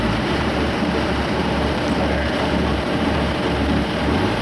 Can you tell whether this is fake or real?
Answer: fake